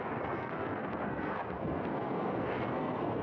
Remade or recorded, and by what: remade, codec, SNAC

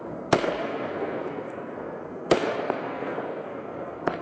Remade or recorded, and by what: remade, codec, SNAC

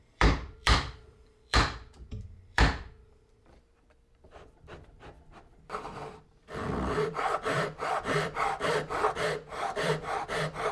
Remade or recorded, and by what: remade, vocoder, BigVGAN v2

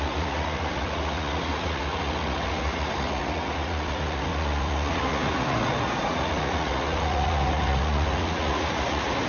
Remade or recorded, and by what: remade, vocoder, Vocos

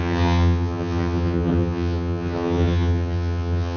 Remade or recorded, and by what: remade, vocoder, HiFi-GAN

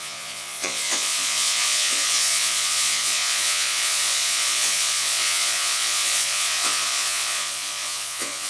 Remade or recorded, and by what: remade, vocoder, Vocos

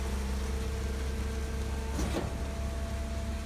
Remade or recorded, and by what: recorded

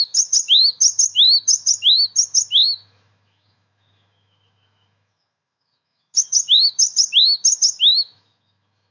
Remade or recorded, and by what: remade, autoencoder, DAC-VAE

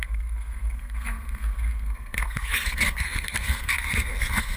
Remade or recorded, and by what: remade, codec, SNAC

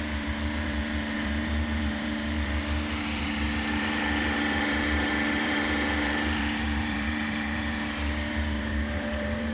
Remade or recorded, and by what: remade, vocoder, BigVGAN v2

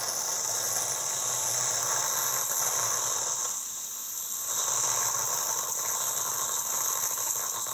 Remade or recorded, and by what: recorded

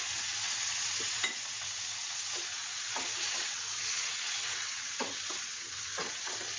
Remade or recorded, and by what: remade, vocoder, WaveNeXt